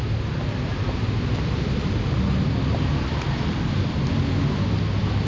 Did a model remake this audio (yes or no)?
no